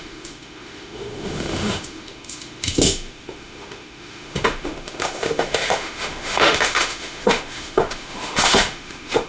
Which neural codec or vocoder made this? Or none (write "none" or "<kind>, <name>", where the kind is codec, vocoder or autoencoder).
autoencoder, DAC-VAE